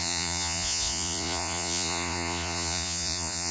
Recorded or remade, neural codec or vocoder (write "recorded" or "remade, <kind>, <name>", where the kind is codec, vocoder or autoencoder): remade, vocoder, Vocos